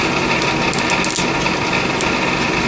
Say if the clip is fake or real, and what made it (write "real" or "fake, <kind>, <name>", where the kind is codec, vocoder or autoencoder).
real